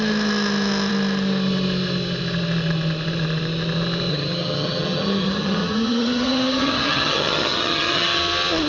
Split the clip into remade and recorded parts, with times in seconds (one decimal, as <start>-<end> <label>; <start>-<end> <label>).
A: 0.0-4.1 recorded; 4.1-8.2 remade; 8.2-8.7 recorded